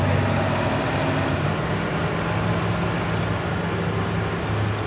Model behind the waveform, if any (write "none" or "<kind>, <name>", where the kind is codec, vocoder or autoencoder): none